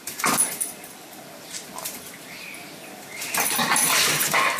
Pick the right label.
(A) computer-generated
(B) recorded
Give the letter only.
A